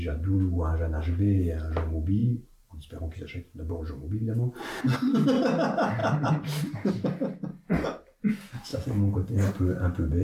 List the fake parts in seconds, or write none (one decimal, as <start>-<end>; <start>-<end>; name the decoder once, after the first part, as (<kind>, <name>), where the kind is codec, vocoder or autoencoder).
6.0-6.9 (vocoder, BigVGAN v2)

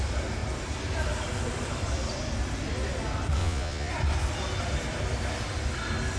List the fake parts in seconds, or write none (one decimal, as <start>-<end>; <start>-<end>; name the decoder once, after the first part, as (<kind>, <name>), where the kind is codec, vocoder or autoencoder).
3.4-3.9 (vocoder, Vocos)